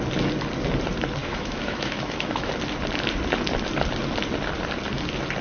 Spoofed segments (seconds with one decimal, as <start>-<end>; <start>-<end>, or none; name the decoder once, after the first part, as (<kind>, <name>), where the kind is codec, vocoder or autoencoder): 1.2-2.5 (autoencoder, DAC-VAE)